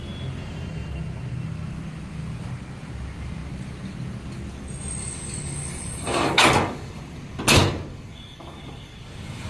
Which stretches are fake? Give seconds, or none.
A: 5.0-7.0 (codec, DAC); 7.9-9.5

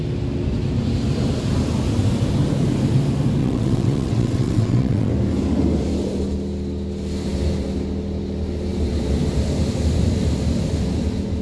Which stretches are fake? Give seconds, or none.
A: 3.4-5.1 (vocoder, WaveNeXt)

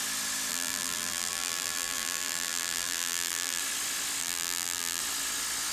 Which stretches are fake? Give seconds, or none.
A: 0.5-3.6 (vocoder, BigVGAN v2); 4.2-5.0

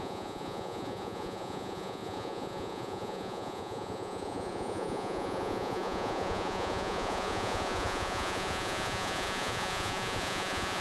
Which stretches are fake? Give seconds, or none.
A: 0.0-10.8 (vocoder, Vocos)

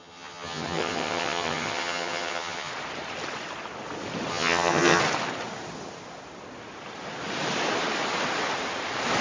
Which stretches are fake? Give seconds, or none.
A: 0.0-2.7 (vocoder, HiFi-GAN); 4.3-5.0

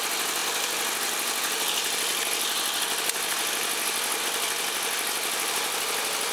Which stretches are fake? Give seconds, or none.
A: none

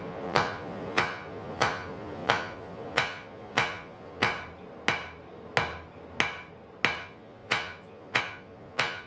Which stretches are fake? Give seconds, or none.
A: 0.0-4.3 (vocoder, Vocos); 7.0-9.1

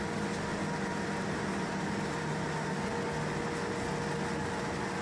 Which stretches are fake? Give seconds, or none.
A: none